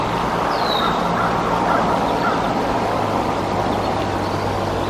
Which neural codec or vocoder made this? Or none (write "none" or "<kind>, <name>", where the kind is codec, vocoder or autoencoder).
none